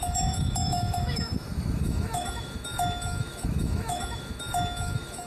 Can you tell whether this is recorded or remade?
remade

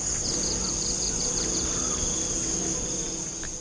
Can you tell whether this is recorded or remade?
recorded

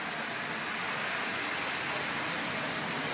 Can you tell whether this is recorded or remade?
recorded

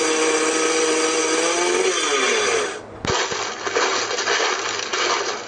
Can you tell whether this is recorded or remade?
recorded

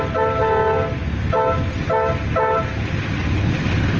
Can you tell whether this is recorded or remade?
recorded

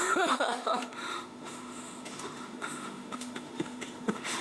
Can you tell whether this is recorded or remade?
remade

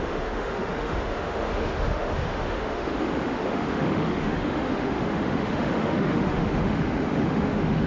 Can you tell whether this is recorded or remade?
remade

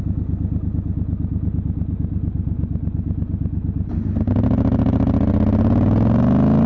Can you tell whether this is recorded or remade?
recorded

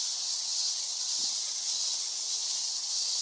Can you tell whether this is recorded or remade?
remade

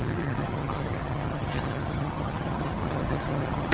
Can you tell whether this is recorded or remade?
remade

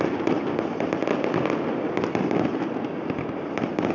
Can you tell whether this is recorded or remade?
recorded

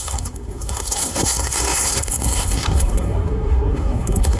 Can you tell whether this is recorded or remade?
remade